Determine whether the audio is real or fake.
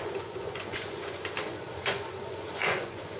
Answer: fake